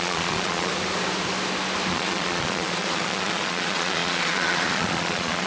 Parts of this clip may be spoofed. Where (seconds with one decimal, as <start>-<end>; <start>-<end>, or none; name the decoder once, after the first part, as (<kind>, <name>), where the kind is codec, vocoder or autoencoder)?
0.0-0.7 (vocoder, Vocos); 1.9-5.5